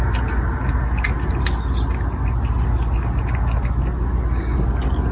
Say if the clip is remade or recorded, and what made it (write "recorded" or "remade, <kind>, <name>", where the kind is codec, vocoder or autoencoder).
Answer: recorded